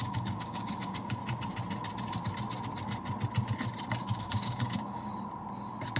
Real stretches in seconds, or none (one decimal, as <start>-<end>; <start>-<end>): 1.2-4.2; 5.1-6.0